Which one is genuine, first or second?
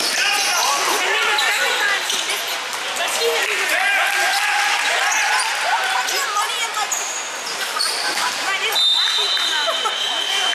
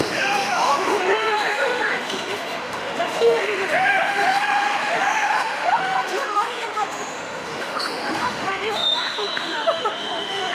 first